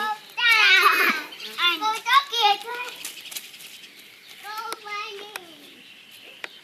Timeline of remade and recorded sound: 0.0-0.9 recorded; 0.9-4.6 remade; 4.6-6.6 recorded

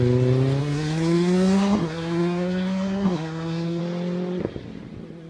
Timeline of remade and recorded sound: 0.0-0.6 recorded; 0.6-3.8 remade; 3.8-5.3 recorded

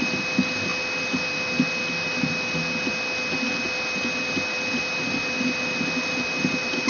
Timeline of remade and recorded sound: 0.0-6.9 recorded